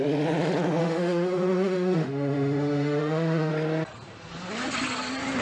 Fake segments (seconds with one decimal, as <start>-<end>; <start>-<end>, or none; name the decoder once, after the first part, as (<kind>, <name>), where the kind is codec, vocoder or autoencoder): 0.8-3.5 (autoencoder, DAC-VAE)